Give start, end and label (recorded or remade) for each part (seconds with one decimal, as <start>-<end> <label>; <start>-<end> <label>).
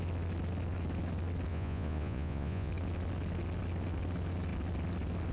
0.0-1.5 recorded; 1.5-2.7 remade; 2.7-5.3 recorded